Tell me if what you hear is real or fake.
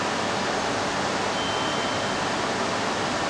real